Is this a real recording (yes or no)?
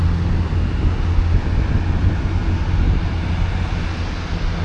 yes